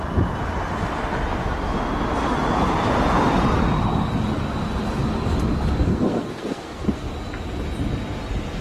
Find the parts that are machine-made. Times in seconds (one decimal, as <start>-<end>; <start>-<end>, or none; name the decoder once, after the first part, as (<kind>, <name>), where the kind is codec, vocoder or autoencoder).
5.9-7.1 (codec, SNAC)